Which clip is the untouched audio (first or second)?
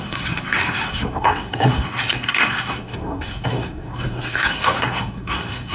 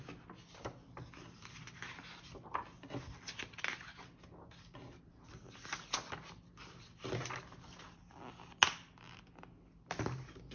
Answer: second